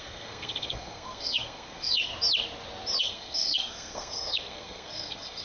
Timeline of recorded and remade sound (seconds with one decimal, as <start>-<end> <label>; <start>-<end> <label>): 0.0-2.1 remade; 2.1-3.0 recorded; 3.0-5.4 remade